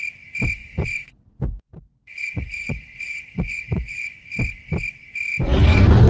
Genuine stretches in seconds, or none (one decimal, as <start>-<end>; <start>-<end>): 0.0-0.6; 4.3-6.1